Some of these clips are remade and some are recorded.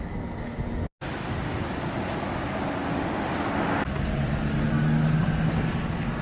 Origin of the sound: recorded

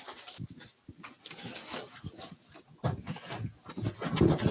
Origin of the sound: recorded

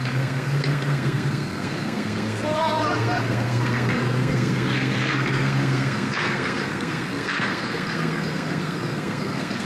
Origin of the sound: remade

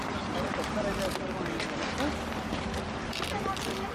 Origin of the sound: recorded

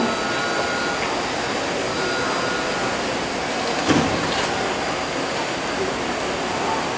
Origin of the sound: recorded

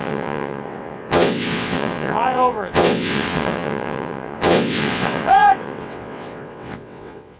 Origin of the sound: remade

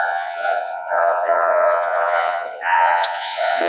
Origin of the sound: remade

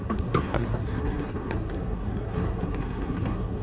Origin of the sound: remade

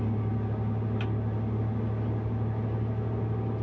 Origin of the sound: recorded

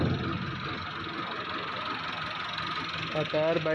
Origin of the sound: recorded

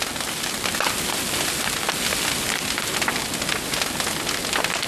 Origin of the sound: recorded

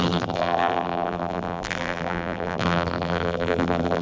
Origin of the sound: remade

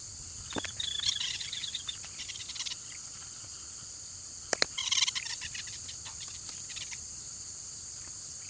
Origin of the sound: recorded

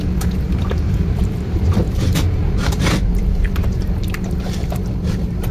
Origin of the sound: remade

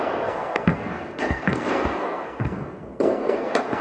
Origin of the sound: remade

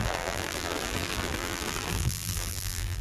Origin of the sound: remade